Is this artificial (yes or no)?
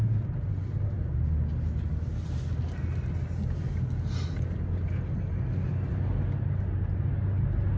no